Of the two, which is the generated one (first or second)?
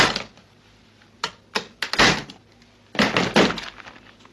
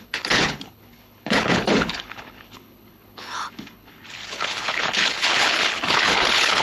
second